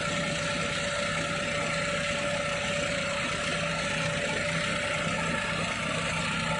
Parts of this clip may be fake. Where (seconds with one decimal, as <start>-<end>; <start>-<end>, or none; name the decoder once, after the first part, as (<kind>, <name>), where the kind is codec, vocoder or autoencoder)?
none